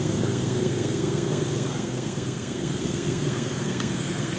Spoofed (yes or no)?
yes